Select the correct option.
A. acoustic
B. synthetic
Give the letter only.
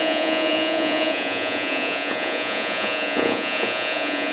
B